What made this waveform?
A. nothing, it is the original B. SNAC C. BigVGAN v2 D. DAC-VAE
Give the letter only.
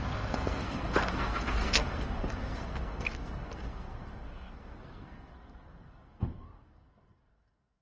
B